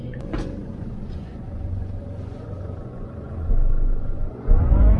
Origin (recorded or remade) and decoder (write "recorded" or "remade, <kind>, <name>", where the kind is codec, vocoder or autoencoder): remade, vocoder, Vocos